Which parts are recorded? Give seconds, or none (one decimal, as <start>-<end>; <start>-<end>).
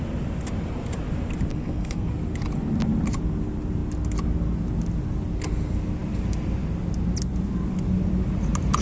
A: 0.0-1.5; 2.1-8.8